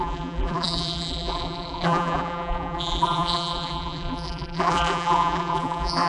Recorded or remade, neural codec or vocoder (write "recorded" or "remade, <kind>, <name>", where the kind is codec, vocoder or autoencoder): remade, vocoder, BigVGAN v2